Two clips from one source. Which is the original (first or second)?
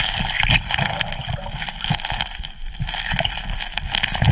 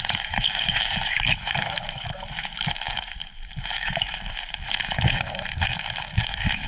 first